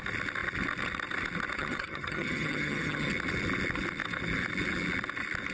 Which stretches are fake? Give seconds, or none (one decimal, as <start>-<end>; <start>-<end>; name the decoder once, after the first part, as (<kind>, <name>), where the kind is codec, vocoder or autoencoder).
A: 1.6-3.1 (vocoder, HiFi-GAN)